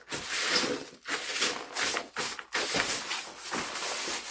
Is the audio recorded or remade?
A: recorded